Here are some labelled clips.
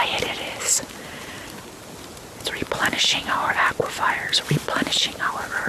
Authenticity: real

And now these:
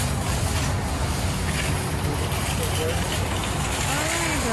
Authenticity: real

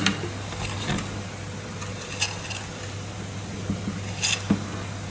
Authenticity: real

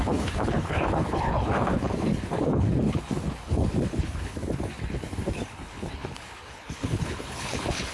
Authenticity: fake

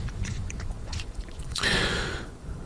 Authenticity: fake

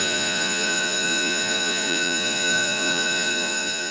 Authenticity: fake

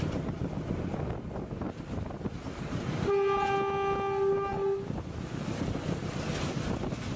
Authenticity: real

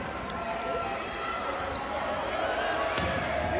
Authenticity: real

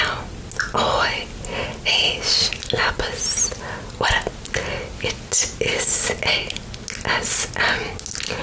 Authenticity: real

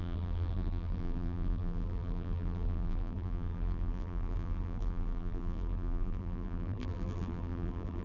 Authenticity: fake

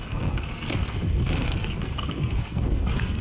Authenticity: fake